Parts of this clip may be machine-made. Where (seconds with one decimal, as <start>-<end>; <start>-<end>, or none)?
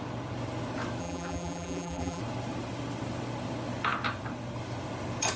1.0-2.2